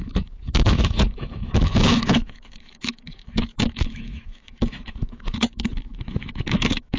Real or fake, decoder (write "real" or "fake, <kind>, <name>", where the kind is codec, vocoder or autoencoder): fake, autoencoder, DAC-VAE